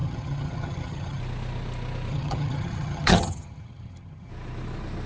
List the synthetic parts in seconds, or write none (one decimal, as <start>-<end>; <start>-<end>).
0.0-1.2; 2.1-4.3